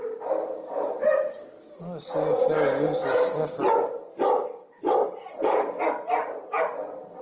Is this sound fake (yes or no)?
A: no